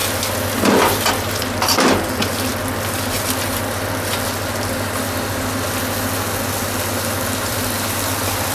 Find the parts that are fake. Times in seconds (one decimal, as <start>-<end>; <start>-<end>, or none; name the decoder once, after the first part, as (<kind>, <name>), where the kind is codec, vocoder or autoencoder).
1.1-2.5 (vocoder, BigVGAN v2); 7.5-8.5